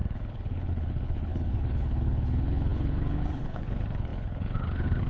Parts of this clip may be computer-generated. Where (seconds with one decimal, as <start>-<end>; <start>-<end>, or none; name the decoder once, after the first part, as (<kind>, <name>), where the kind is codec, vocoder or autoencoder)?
0.0-5.1 (codec, HILCodec)